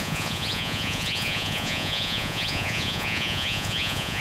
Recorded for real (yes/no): no